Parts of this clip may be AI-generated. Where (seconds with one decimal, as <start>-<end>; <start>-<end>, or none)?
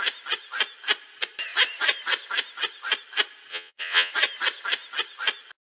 3.5-4.1